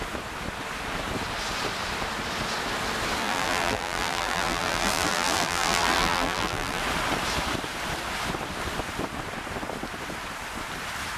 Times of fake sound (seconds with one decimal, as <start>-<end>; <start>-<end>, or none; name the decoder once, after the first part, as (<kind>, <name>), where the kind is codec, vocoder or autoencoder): 3.2-6.8 (vocoder, BigVGAN v2)